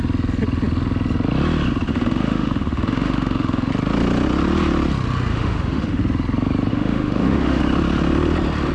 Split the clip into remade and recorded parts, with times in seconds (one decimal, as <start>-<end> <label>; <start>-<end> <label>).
0.0-1.9 recorded; 1.9-3.7 remade; 3.7-5.3 recorded; 5.3-6.0 remade; 6.0-6.7 recorded; 6.7-7.6 remade; 7.6-8.7 recorded